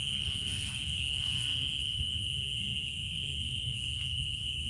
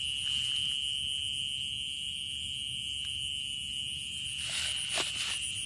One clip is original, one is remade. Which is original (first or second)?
second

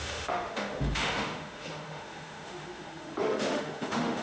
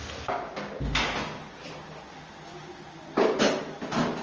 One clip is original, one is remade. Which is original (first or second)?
second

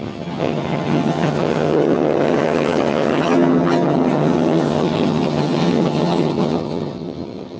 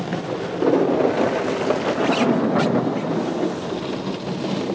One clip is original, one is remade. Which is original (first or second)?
second